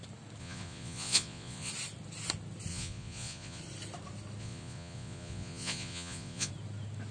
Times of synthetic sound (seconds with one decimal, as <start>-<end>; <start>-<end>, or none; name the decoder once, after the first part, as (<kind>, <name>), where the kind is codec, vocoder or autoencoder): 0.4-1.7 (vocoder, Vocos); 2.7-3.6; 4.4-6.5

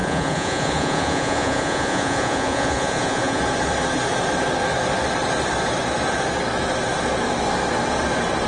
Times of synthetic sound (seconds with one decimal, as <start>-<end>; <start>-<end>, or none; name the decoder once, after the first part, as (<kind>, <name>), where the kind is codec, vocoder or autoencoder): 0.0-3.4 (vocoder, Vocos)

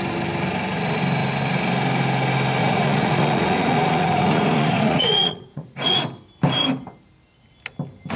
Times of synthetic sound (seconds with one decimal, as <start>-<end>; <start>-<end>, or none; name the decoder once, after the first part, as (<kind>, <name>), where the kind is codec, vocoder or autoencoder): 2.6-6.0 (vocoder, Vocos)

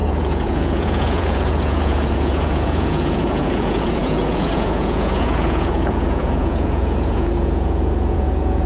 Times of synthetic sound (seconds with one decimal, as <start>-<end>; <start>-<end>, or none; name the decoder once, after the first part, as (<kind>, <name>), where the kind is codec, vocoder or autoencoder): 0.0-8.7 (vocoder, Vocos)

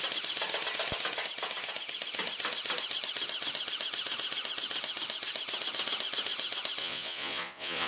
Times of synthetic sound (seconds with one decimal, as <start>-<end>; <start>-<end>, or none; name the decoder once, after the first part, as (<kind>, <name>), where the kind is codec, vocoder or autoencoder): 6.8-7.9 (vocoder, Vocos)

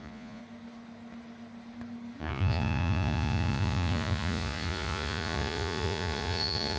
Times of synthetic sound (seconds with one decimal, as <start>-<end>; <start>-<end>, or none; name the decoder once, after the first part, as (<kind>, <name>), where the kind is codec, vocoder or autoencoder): 0.0-0.4 (vocoder, Vocos); 2.2-6.8

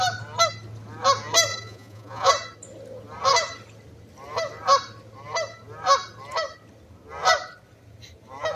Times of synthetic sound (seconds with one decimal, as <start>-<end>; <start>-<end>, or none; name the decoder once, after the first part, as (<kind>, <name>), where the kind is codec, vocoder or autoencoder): 1.5-2.3 (vocoder, Vocos)